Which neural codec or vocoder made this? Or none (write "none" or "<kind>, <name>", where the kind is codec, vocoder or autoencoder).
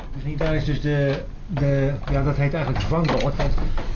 none